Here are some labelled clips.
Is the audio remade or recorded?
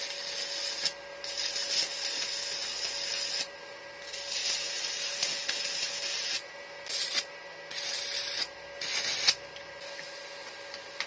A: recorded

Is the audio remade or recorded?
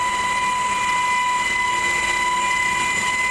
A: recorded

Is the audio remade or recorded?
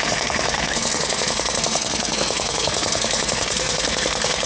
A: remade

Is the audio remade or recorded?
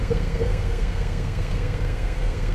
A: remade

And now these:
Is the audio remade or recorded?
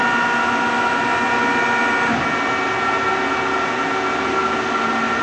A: recorded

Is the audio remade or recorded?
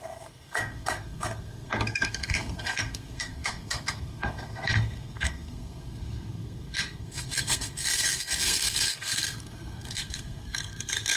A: remade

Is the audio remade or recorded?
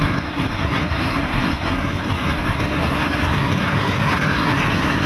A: remade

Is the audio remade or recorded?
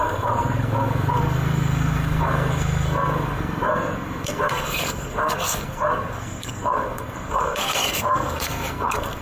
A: remade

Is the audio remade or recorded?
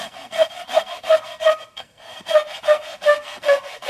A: remade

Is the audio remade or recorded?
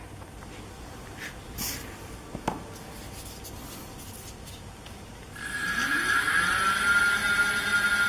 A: recorded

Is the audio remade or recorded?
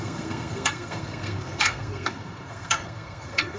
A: remade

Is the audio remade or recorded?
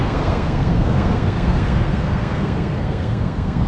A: remade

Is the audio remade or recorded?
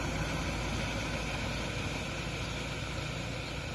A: recorded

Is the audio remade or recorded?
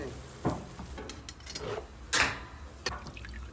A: recorded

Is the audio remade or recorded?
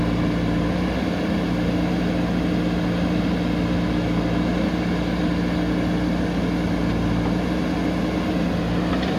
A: recorded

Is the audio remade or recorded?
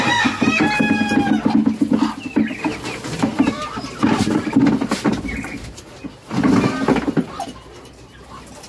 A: recorded